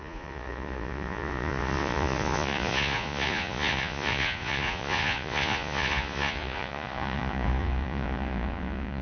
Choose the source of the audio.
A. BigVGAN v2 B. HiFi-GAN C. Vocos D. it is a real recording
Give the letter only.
C